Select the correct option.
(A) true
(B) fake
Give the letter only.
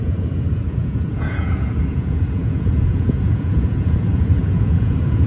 B